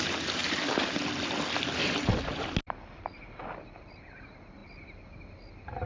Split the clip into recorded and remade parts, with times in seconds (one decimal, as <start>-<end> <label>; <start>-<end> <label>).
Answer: 0.0-5.9 recorded